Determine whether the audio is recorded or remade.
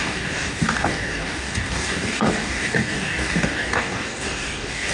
remade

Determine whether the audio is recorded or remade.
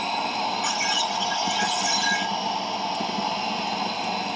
recorded